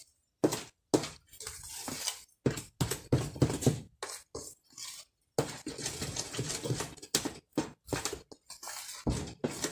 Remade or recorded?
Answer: recorded